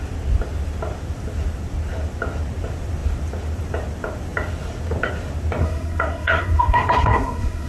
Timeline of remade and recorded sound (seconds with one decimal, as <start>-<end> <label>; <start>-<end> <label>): 0.0-5.6 recorded; 5.6-7.7 remade